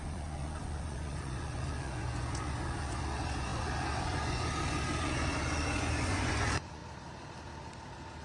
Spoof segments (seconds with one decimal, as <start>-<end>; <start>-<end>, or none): 0.0-6.8